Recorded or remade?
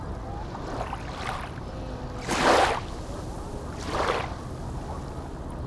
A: recorded